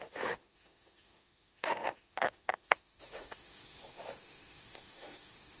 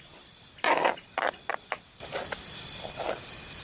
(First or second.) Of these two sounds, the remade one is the first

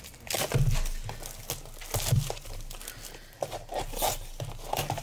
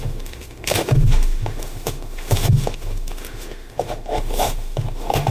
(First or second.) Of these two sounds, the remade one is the second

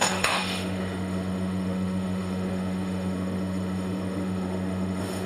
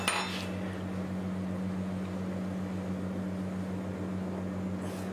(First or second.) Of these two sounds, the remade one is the first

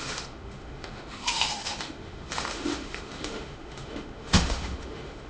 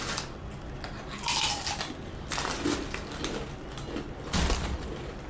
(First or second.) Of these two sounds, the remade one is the first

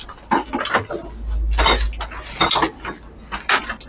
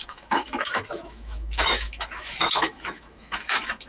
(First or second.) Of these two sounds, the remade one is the second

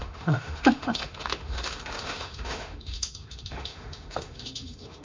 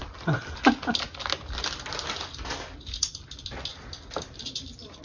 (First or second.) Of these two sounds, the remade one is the first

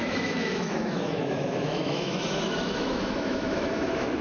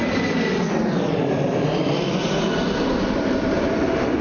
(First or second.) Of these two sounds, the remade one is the first